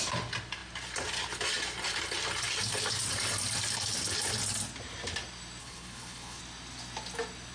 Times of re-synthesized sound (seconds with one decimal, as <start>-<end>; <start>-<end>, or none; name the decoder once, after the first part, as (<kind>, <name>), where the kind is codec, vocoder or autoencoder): 5.6-6.4 (codec, HILCodec)